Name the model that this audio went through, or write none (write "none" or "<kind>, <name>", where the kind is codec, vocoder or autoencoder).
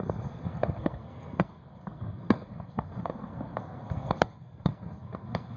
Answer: codec, SNAC